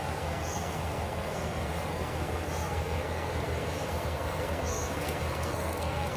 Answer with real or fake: fake